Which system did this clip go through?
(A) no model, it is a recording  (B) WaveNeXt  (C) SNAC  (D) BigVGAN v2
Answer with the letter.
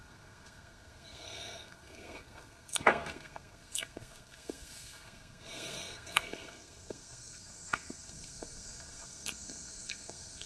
C